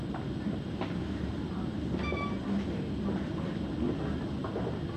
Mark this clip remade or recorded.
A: recorded